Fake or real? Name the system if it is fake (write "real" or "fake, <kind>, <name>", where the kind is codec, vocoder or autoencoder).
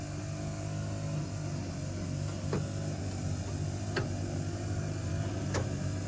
real